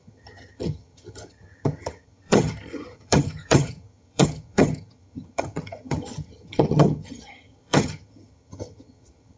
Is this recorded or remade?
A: remade